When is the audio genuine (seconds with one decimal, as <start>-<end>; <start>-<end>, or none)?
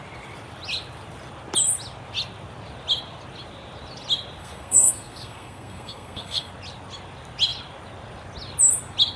0.0-4.4; 6.5-9.2